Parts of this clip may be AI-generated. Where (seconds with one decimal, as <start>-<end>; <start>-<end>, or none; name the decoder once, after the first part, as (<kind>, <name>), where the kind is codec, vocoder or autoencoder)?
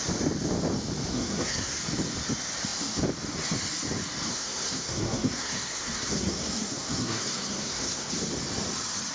1.1-1.8 (codec, SNAC); 4.3-8.1